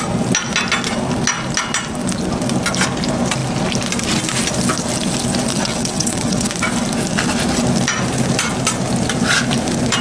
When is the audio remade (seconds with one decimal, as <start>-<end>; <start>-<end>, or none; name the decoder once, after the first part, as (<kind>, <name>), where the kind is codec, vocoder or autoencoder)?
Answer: 5.5-6.5 (vocoder, WaveNeXt)